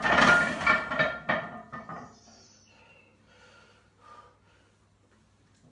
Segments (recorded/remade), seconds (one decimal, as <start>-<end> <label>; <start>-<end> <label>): 0.0-5.7 recorded